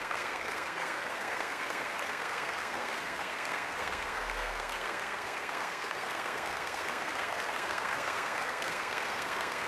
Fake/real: fake